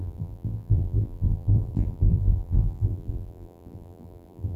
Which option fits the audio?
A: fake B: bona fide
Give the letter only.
A